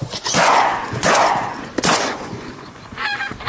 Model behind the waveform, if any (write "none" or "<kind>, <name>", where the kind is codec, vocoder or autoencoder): vocoder, Vocos